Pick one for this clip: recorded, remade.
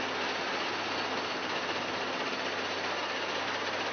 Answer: recorded